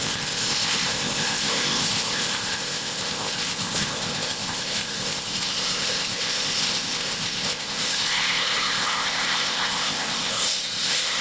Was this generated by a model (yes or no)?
yes